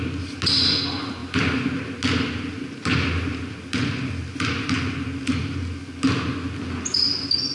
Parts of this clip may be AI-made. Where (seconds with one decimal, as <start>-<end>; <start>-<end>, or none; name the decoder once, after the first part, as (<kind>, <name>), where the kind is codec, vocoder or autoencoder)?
none